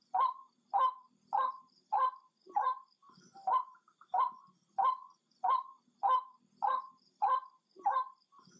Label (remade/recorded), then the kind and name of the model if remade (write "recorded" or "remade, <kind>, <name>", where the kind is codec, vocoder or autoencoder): remade, vocoder, BigVGAN v2